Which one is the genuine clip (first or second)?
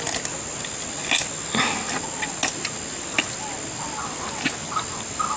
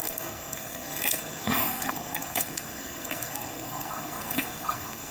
first